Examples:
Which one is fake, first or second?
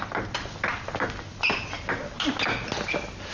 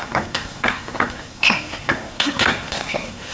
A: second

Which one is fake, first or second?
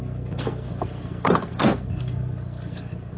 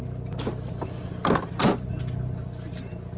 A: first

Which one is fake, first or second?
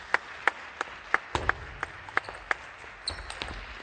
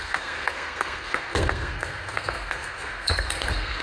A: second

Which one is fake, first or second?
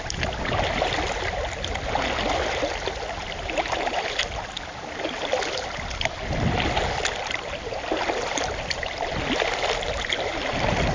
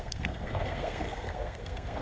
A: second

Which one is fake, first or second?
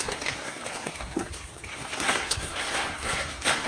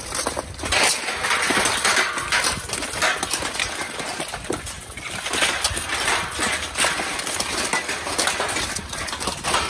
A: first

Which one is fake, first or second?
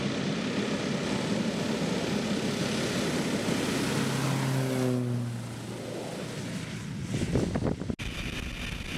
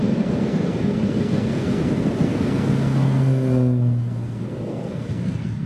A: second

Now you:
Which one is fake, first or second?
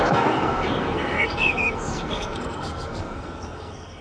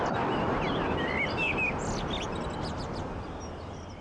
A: first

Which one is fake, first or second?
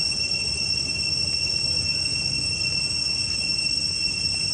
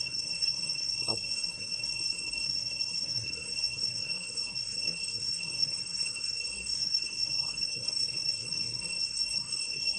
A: second